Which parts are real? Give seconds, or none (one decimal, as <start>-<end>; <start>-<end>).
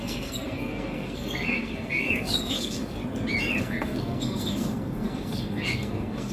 3.0-3.6